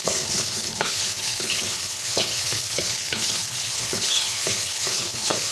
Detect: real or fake fake